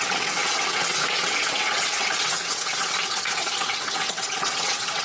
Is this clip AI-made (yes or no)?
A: yes